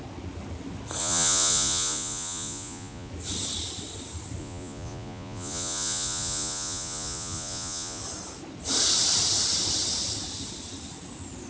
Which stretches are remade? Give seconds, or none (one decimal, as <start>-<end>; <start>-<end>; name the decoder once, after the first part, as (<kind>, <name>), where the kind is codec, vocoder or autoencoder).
1.0-3.1 (vocoder, Vocos); 4.4-8.0